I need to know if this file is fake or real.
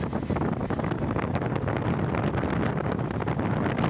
real